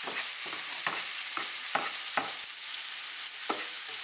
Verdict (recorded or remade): recorded